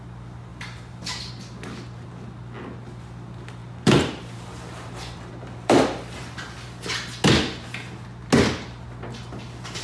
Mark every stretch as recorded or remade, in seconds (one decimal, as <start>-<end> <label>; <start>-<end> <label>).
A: 0.0-0.5 recorded; 0.5-1.3 remade; 1.3-3.6 recorded; 3.6-5.8 remade; 5.8-9.8 recorded